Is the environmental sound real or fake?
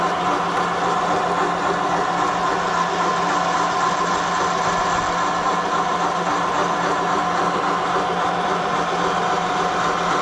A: real